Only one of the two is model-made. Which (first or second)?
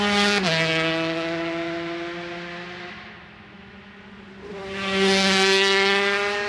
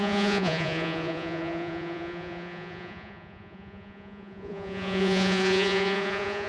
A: second